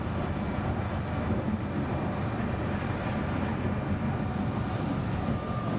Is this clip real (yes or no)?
yes